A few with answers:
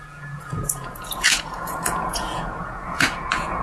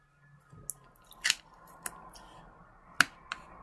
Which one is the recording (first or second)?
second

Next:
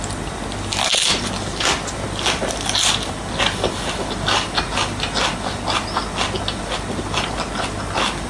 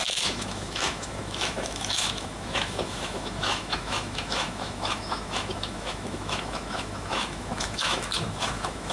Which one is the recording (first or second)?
first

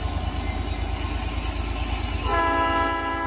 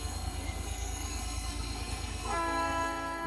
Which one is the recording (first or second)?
first